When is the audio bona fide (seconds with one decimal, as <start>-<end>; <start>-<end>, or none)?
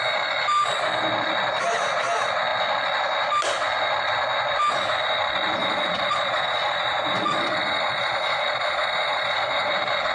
0.0-5.6; 9.7-10.1